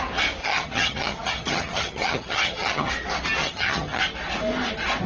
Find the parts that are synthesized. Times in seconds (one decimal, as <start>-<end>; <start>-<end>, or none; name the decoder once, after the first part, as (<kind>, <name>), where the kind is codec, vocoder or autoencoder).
0.4-2.9 (vocoder, HiFi-GAN); 3.4-4.0